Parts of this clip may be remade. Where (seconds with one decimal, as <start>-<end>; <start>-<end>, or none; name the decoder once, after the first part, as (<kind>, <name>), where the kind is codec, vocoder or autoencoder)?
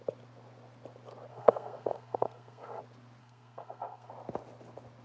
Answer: 1.3-2.8 (codec, SNAC); 3.2-4.1